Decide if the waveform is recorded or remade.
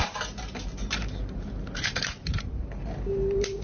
remade